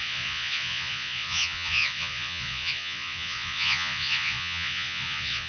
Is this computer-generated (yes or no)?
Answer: yes